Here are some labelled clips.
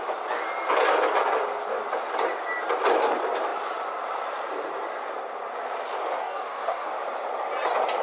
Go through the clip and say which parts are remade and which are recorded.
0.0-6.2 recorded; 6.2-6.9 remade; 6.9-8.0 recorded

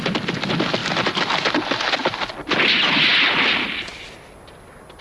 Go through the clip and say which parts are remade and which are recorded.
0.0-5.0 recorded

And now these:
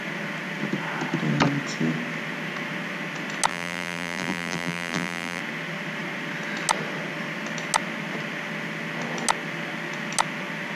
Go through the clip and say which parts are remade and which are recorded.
0.0-3.5 recorded; 3.5-5.4 remade; 5.4-10.8 recorded